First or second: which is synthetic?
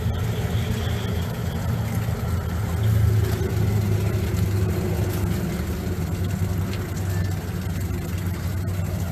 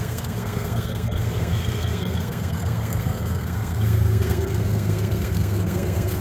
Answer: second